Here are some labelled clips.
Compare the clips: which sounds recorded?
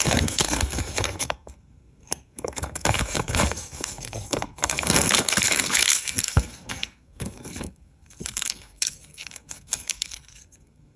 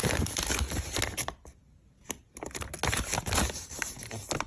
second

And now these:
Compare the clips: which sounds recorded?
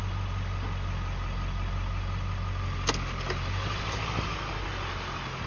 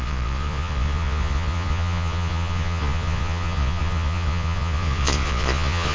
first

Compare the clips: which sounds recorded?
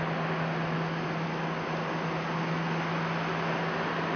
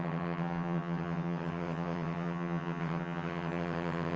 first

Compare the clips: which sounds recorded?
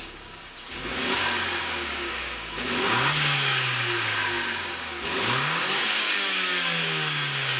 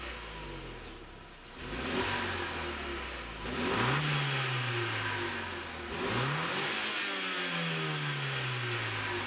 second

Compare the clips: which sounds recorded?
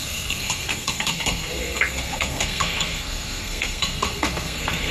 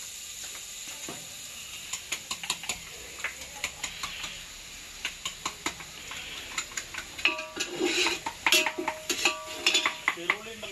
second